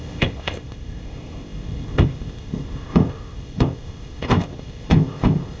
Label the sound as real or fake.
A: fake